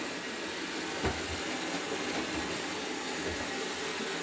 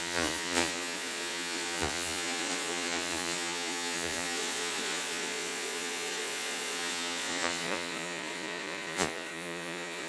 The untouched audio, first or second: first